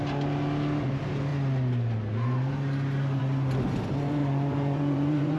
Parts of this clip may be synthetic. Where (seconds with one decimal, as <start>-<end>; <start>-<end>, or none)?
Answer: 4.2-5.4

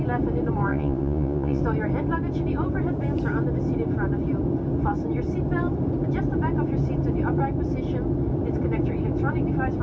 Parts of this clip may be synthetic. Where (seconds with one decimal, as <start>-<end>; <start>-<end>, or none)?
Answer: 0.7-1.6

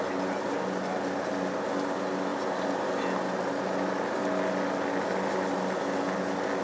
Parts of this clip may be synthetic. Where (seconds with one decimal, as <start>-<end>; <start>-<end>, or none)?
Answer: none

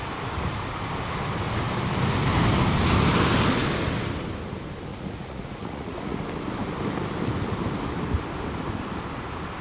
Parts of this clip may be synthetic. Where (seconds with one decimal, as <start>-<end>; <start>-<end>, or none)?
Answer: 4.9-6.2

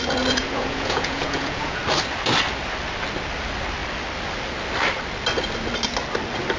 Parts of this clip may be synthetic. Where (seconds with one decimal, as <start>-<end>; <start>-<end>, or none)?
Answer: 0.4-1.8

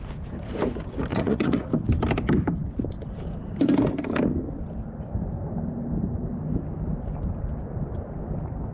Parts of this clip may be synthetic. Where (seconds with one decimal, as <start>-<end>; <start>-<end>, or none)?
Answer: 1.1-1.7

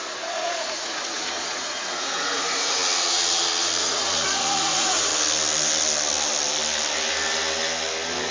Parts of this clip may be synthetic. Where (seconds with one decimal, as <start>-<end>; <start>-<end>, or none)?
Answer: 0.0-2.8; 3.8-5.1

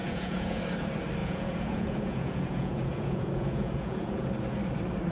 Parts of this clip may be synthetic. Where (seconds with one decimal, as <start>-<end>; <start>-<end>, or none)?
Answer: 0.0-0.6; 1.2-4.3